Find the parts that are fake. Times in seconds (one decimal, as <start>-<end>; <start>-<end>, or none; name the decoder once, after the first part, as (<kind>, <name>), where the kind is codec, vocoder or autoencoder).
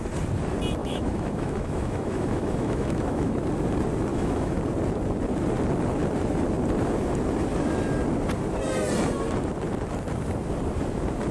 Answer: 0.8-3.4 (autoencoder, DAC-VAE); 4.1-4.6